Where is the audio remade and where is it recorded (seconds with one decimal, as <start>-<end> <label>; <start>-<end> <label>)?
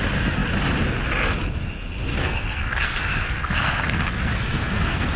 0.0-2.1 recorded; 2.1-5.2 remade